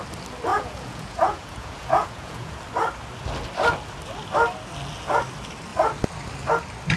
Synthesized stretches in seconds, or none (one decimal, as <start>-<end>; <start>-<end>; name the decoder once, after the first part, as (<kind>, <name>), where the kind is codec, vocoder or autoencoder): 0.5-2.6 (vocoder, Vocos)